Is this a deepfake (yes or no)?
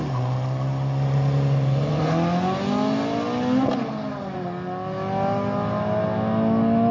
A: no